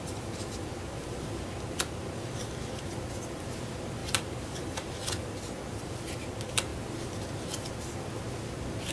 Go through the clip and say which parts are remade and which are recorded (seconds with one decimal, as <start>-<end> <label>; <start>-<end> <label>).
0.0-4.0 recorded; 4.0-4.9 remade; 4.9-8.9 recorded